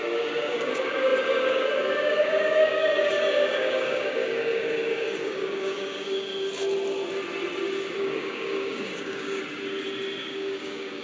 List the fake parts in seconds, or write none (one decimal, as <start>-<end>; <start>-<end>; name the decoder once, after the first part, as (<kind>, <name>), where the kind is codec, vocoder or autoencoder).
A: 0.0-6.3 (codec, DAC); 8.0-9.4; 10.2-11.0